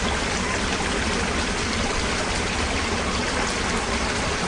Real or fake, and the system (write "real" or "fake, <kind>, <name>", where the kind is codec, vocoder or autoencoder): real